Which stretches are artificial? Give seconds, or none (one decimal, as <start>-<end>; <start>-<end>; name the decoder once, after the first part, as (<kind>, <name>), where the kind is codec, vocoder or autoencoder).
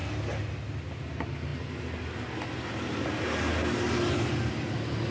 none